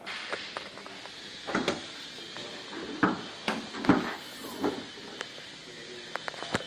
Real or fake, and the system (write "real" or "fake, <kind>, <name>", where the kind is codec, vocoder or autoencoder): real